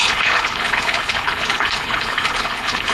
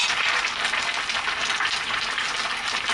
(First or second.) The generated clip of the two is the first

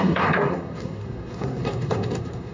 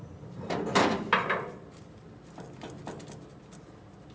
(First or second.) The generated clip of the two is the first